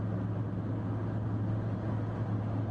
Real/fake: real